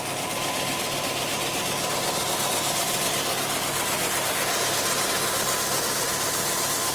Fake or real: real